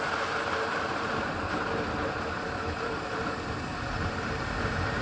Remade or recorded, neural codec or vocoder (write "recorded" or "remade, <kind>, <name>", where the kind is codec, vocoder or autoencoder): remade, vocoder, BigVGAN v2